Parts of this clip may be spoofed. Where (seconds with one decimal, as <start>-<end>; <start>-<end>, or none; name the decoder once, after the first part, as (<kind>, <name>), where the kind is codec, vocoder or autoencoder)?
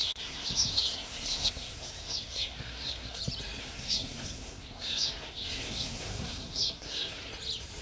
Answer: 0.0-3.2 (codec, SNAC); 3.6-7.3